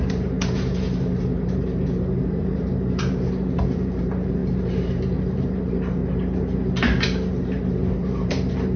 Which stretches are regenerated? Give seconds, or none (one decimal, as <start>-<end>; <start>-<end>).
0.0-6.0; 7.3-8.8